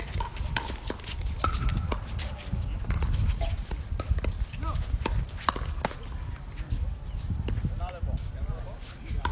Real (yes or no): yes